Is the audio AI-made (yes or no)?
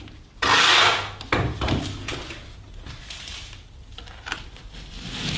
no